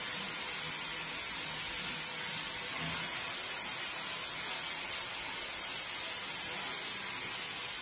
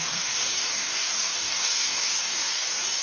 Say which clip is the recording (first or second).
first